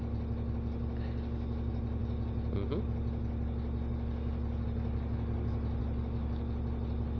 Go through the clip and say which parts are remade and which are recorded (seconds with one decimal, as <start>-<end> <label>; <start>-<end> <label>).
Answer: 0.0-7.2 recorded